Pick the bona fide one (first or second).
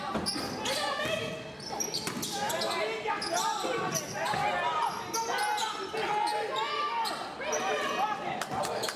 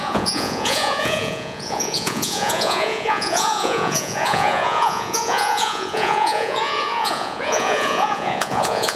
first